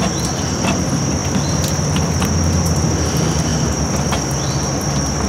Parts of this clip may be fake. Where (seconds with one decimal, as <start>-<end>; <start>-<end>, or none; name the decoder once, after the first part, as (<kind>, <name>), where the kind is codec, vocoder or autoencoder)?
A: none